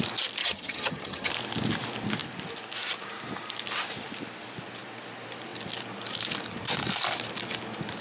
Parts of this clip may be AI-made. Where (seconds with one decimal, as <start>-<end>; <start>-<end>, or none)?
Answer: 0.4-1.3

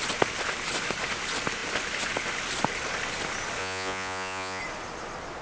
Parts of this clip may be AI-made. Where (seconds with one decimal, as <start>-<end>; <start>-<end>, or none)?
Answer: 3.6-4.6

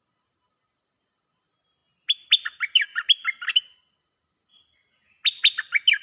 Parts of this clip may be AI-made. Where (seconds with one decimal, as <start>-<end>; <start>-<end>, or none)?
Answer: none